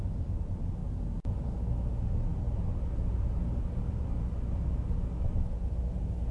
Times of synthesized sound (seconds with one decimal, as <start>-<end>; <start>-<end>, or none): none